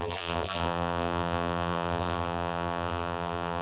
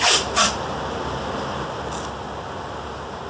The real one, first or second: second